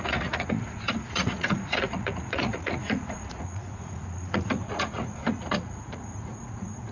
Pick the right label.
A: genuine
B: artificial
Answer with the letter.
B